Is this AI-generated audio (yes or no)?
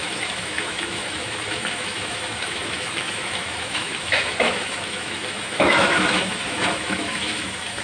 yes